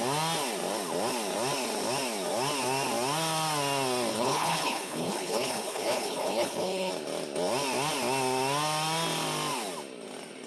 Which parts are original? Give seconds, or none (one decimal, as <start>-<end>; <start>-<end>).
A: 0.0-4.1; 6.9-10.5

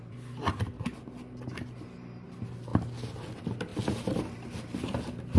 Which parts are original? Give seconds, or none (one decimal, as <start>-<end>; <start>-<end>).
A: 0.0-5.4